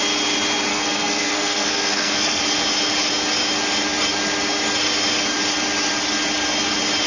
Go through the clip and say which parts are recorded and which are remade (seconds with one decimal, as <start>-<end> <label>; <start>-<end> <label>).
0.0-0.7 recorded; 0.7-2.4 remade; 2.4-7.1 recorded